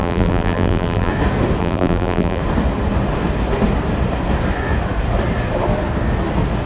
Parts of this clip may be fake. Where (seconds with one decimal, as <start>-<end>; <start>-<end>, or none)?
0.0-1.1; 1.6-2.4